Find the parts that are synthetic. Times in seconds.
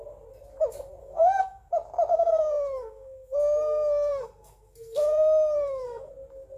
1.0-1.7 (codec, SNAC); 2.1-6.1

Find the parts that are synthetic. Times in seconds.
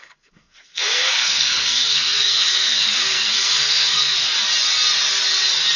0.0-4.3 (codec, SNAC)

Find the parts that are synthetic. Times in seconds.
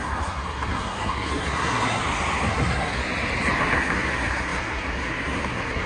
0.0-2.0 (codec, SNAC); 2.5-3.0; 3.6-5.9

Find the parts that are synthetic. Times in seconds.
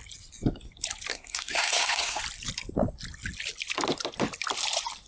1.1-2.2 (codec, SNAC)